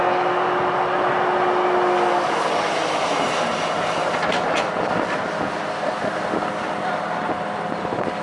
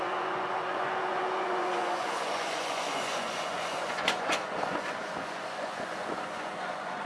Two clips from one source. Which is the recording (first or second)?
first